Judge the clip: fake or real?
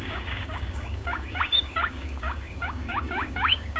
fake